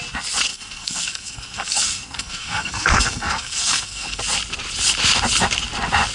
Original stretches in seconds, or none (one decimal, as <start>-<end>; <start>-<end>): 0.0-0.5; 4.2-6.1